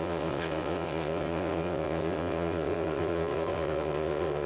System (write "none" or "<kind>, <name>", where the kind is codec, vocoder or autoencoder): vocoder, WaveNeXt